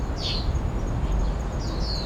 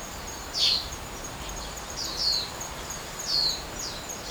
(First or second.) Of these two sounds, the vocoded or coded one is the second